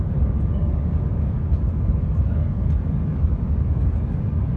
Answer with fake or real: fake